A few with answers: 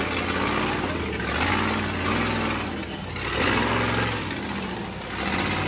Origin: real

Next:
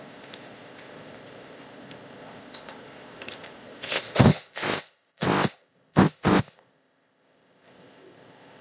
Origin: fake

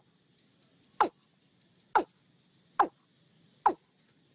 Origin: real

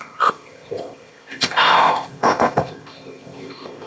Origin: fake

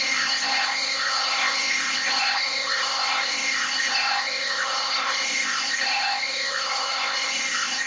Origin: fake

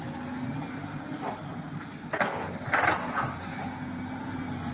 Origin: real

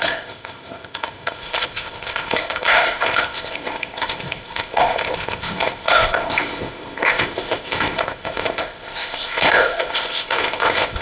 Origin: fake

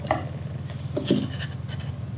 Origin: real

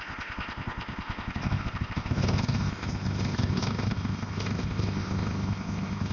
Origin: fake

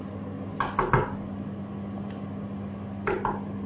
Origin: real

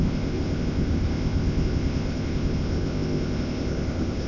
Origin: fake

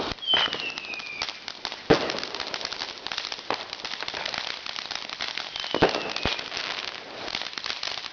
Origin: real